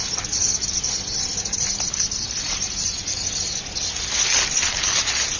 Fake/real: real